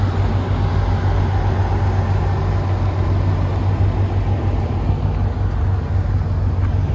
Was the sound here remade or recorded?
recorded